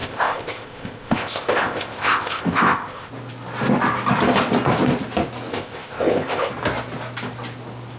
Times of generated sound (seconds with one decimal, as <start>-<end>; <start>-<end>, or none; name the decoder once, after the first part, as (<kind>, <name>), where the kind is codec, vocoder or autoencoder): 0.0-3.1 (codec, ZipCodec); 5.5-6.5